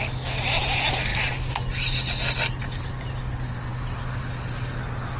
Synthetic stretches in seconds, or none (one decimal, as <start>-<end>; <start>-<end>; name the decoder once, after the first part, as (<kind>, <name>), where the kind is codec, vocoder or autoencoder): none